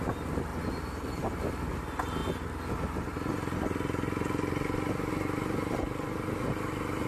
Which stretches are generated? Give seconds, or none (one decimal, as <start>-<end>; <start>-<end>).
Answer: none